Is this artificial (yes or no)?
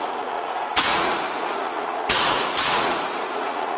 yes